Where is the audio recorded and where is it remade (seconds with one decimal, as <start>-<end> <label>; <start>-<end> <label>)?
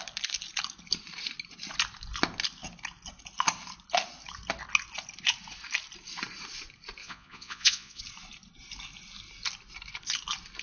0.0-7.0 recorded; 7.0-8.0 remade; 8.0-10.6 recorded